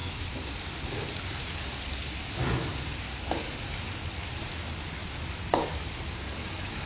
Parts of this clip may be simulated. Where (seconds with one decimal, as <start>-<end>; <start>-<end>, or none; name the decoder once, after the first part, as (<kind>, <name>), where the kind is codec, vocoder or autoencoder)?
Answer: 0.0-0.5 (autoencoder, DAC-VAE); 6.4-6.9